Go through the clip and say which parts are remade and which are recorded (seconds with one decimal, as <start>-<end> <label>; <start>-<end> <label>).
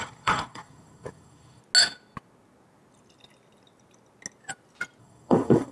0.0-1.6 remade; 1.6-5.0 recorded; 5.0-5.7 remade